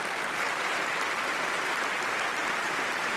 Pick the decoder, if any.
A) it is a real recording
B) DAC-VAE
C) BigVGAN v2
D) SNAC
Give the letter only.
A